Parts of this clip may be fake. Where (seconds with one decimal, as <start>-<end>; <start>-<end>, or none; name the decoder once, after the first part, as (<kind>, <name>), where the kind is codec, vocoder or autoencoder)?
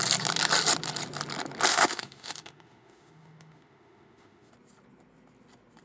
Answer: 1.7-4.5 (autoencoder, DAC-VAE)